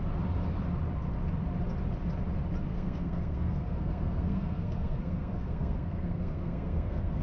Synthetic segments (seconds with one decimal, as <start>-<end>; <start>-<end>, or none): 2.7-7.2